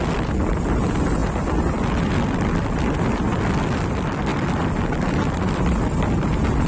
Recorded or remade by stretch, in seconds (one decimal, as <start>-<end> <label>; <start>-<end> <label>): 0.0-6.7 recorded